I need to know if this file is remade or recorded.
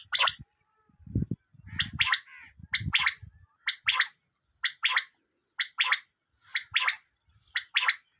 recorded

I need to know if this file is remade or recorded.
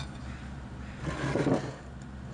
recorded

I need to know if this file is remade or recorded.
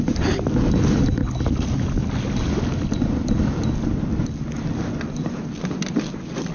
recorded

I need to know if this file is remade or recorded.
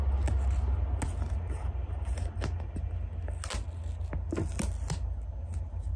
recorded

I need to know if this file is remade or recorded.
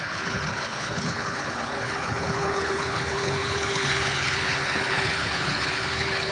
remade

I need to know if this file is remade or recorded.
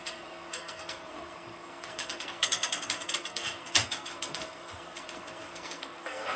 remade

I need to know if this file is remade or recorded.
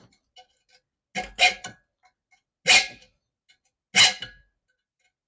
recorded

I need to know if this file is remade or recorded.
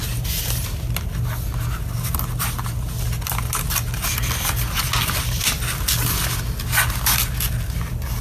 recorded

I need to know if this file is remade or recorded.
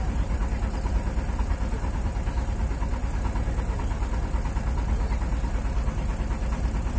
recorded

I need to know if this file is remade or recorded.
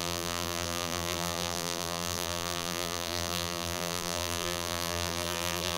remade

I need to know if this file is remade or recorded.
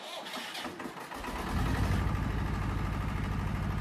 recorded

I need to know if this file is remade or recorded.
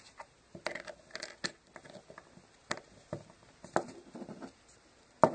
recorded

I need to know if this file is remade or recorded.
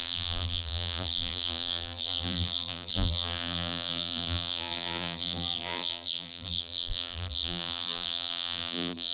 remade